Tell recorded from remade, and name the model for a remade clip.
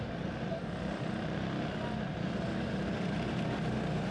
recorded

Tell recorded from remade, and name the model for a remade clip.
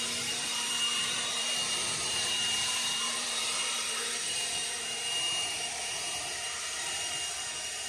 remade, vocoder, BigVGAN v2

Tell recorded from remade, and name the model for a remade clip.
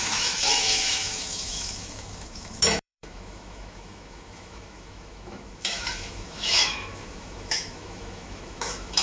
remade, autoencoder, DAC-VAE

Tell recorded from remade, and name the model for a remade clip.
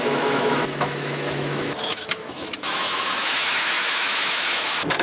remade, autoencoder, DAC-VAE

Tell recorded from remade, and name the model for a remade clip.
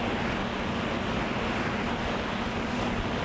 recorded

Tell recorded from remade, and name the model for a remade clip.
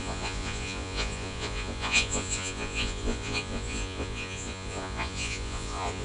remade, vocoder, Vocos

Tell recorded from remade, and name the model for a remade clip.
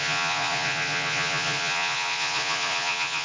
remade, vocoder, Vocos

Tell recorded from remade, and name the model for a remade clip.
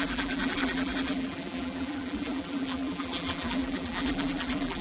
remade, vocoder, BigVGAN v2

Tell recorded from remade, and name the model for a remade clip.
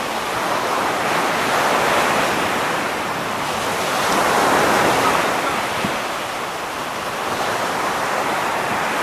recorded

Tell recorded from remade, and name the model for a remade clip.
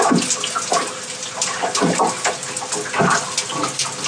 recorded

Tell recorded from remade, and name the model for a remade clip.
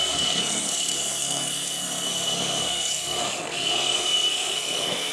remade, codec, SNAC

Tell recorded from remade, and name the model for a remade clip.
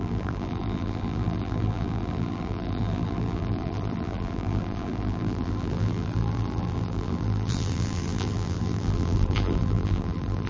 remade, vocoder, BigVGAN v2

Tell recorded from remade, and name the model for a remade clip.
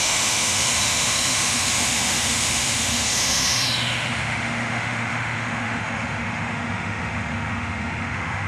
remade, autoencoder, DAC-VAE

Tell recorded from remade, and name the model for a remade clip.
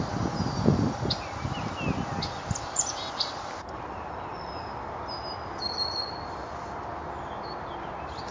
recorded